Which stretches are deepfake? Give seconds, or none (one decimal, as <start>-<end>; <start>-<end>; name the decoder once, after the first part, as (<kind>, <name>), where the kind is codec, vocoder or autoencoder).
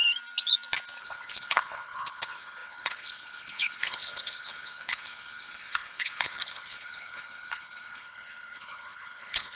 1.0-9.6 (codec, HILCodec)